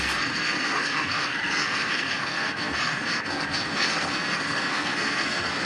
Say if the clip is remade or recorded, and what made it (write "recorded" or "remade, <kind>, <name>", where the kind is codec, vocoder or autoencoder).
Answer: remade, codec, SNAC